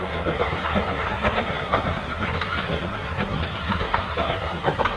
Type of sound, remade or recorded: remade